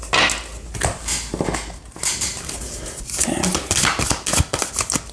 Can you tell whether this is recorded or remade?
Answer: recorded